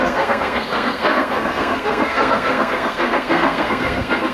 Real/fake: fake